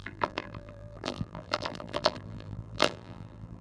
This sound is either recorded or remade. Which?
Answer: remade